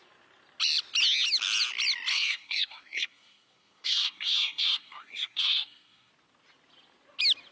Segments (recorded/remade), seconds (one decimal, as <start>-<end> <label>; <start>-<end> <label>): 0.0-2.1 recorded; 2.1-6.1 remade; 6.1-7.5 recorded